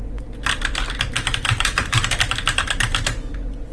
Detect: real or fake real